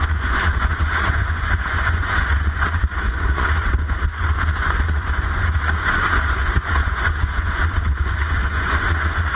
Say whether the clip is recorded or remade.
remade